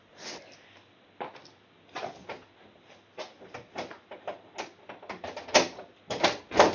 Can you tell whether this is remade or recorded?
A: recorded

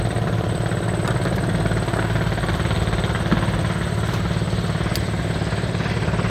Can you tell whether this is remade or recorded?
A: recorded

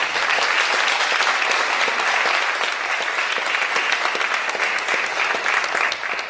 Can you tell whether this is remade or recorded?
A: recorded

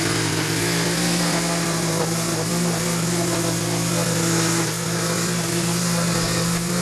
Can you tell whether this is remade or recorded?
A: recorded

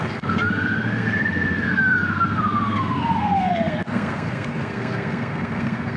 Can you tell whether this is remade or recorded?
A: remade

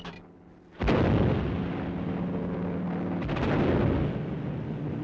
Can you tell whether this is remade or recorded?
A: recorded